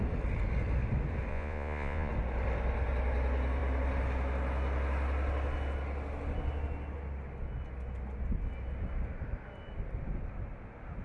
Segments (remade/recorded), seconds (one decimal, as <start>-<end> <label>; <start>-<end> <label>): 0.0-1.3 recorded; 1.3-2.1 remade; 2.1-11.0 recorded